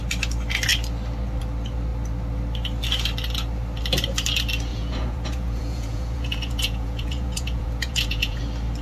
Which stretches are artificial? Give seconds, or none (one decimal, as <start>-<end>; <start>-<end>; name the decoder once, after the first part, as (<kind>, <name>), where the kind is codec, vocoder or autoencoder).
4.7-8.4 (vocoder, Vocos)